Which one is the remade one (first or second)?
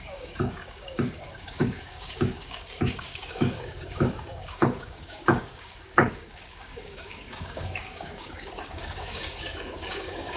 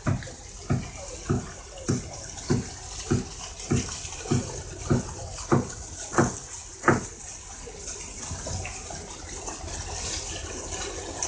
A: first